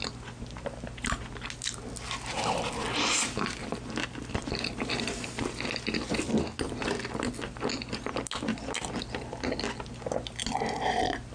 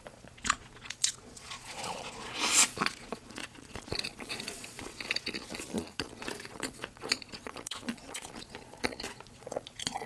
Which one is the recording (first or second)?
first